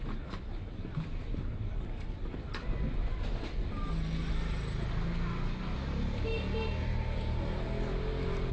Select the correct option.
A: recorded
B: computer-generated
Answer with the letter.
A